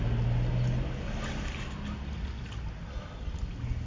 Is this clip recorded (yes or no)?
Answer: yes